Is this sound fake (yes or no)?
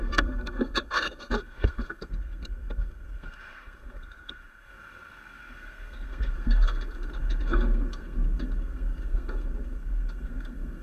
yes